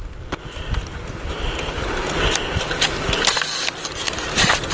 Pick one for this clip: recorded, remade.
recorded